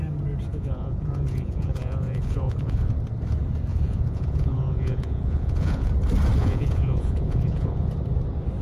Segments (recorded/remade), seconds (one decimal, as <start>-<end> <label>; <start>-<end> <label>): 0.0-0.5 recorded; 0.5-2.9 remade; 2.9-3.7 recorded; 3.7-5.9 remade; 5.9-6.4 recorded; 6.4-7.9 remade; 7.9-8.6 recorded